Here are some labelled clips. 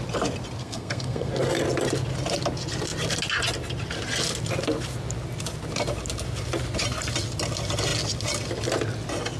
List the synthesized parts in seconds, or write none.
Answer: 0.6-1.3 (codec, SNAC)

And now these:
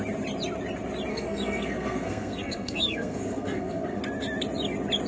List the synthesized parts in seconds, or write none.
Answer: 1.1-4.0 (codec, SNAC)

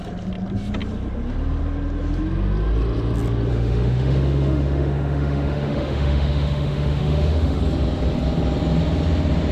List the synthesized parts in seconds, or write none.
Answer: 3.5-7.6 (autoencoder, DAC-VAE)

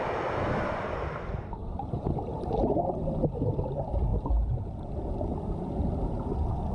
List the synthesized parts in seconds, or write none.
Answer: 1.6-2.8 (vocoder, BigVGAN v2)